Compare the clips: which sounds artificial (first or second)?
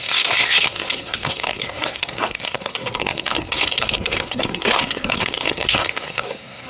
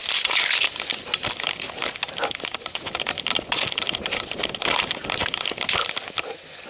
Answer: first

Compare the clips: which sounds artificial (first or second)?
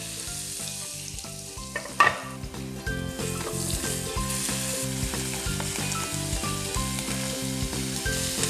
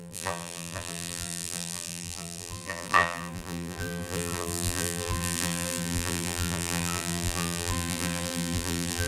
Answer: second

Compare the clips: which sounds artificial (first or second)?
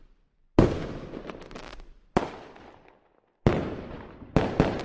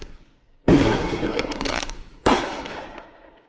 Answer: second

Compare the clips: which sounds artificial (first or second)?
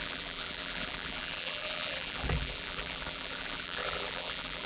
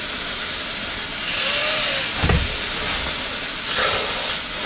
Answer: first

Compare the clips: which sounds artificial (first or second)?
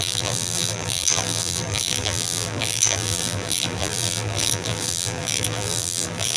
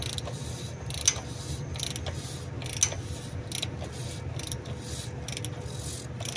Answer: first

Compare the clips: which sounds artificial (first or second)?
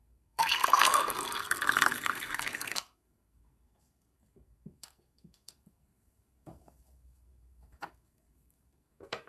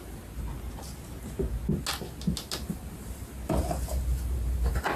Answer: first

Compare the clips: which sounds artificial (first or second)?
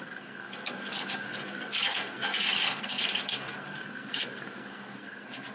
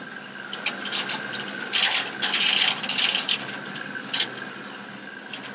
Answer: first